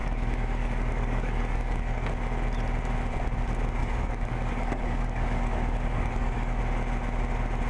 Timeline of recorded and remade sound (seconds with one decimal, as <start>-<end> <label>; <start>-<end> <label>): 0.0-2.1 remade; 2.1-3.8 recorded; 3.8-6.6 remade; 6.6-7.7 recorded